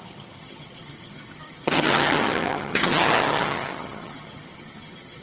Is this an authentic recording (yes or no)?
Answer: no